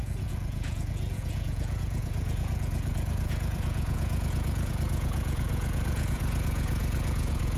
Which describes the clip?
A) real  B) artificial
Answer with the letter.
B